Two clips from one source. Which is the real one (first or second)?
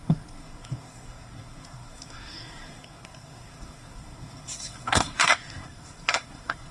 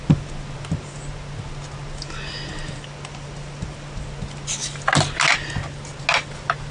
second